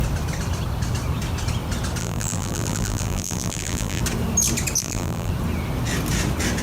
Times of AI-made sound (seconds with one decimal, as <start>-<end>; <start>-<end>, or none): 2.0-4.0; 4.8-5.3